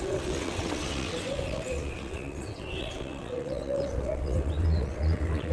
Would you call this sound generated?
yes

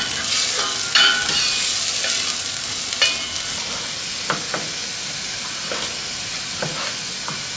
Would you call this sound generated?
no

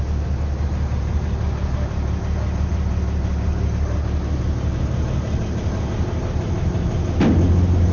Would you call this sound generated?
no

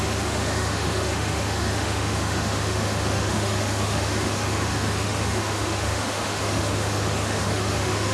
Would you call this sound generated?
yes